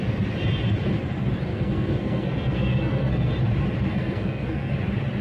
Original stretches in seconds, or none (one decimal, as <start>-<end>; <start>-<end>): 0.0-1.5; 3.3-3.9; 4.7-5.2